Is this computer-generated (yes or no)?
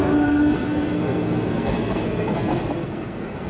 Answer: yes